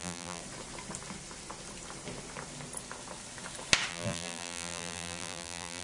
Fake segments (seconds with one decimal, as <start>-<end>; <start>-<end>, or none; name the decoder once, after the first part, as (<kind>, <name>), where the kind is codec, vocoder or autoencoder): 0.0-0.4 (vocoder, BigVGAN v2); 3.9-5.8